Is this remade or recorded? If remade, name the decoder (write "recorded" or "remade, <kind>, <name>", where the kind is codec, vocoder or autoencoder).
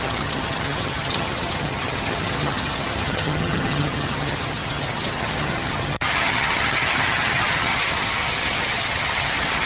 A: remade, vocoder, HiFi-GAN